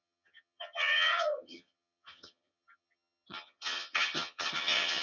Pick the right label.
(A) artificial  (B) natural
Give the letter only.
A